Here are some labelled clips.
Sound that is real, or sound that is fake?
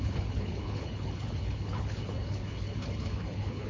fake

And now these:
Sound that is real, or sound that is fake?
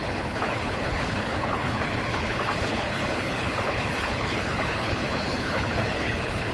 fake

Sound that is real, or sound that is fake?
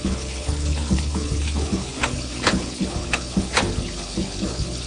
fake